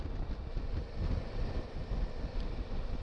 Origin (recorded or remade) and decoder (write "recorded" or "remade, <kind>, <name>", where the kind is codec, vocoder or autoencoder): recorded